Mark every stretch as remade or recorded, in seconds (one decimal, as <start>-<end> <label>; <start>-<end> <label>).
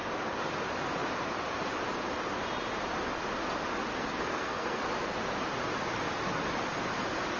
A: 0.0-3.9 recorded; 3.9-4.8 remade; 4.8-7.4 recorded